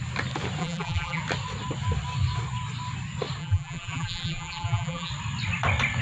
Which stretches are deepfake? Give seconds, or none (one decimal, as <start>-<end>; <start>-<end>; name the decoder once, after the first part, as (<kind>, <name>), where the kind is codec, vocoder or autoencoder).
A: 0.6-1.2 (vocoder, BigVGAN v2); 3.4-5.1